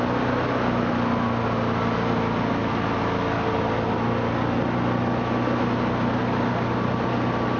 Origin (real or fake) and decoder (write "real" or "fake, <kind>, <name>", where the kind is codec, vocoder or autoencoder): real